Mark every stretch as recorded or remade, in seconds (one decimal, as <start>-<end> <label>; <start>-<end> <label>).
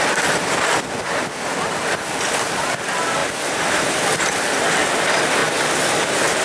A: 0.0-6.4 recorded